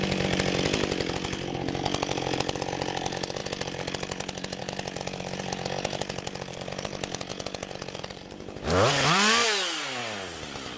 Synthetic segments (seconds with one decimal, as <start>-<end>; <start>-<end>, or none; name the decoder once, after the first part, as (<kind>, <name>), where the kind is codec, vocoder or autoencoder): 7.3-8.0 (vocoder, Vocos)